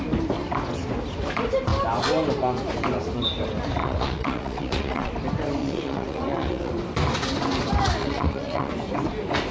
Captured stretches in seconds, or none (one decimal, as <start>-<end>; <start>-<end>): 0.0-3.8; 5.1-5.6; 6.7-8.0; 8.7-9.5